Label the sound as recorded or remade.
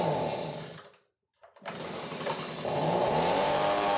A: remade